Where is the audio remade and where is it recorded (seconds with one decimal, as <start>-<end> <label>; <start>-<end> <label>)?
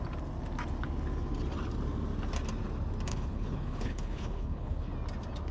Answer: 0.0-3.1 recorded; 3.1-4.9 remade; 4.9-5.5 recorded